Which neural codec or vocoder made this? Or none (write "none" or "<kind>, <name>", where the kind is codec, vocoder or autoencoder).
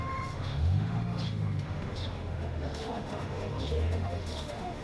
autoencoder, DAC-VAE